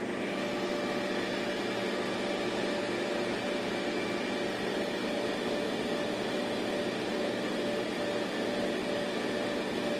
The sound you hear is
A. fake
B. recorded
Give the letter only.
B